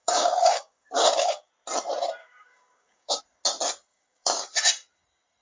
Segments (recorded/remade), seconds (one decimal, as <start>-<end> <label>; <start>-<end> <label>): 0.0-1.5 remade; 1.5-2.2 recorded; 2.2-3.2 remade; 3.2-3.9 recorded; 3.9-4.7 remade; 4.7-5.4 recorded